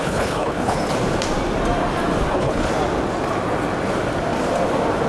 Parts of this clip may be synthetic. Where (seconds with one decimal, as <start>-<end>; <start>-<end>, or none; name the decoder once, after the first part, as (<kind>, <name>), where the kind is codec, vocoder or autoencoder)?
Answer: 0.0-0.8 (codec, HILCodec); 2.3-2.7